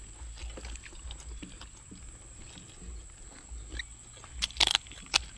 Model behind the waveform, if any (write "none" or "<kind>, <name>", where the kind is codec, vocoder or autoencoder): none